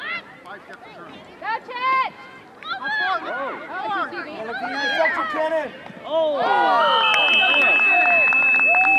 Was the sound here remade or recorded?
recorded